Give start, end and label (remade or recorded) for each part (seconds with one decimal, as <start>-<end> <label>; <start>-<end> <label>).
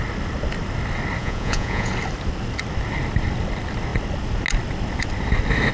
0.0-1.2 recorded; 1.2-1.9 remade; 1.9-5.7 recorded